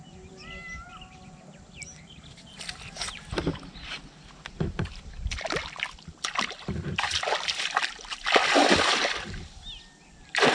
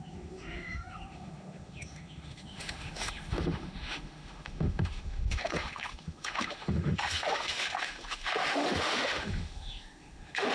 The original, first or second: first